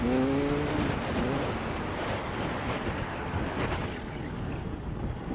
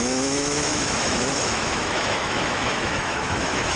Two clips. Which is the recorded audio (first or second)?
first